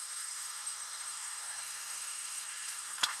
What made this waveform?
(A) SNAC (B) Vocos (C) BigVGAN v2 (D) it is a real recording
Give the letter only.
A